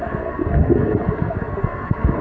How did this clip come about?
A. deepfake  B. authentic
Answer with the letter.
A